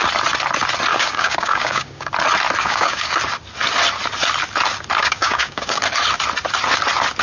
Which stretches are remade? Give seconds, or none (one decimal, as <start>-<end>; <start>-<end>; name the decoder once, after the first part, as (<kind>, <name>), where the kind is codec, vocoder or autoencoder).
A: 0.9-2.1 (codec, DAC); 2.6-3.2; 5.0-5.8